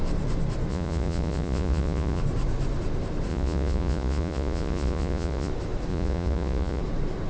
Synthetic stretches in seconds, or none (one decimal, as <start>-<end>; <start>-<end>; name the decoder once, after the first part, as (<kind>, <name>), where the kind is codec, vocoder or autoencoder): 0.7-2.2 (vocoder, Vocos); 3.3-5.5; 5.9-6.8